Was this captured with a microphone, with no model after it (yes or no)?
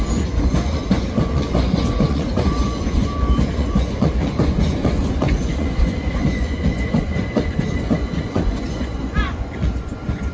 no